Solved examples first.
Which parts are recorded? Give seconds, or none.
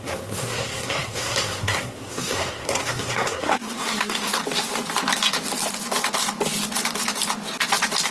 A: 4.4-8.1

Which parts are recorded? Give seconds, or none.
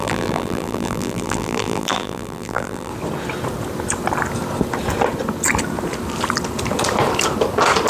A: 2.9-7.9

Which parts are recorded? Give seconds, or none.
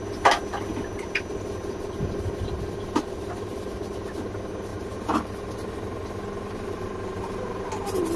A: 0.0-4.7; 5.5-8.2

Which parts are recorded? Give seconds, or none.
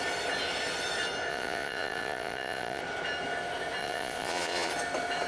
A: 0.0-1.3; 2.8-3.8; 4.7-5.3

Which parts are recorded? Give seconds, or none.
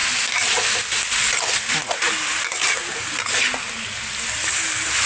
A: 0.0-5.1